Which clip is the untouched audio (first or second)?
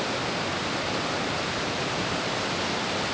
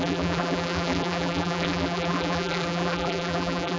first